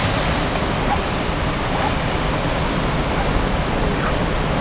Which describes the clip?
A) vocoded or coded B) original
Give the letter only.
B